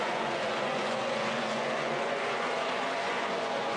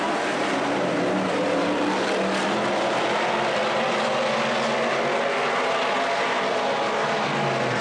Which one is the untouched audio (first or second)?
second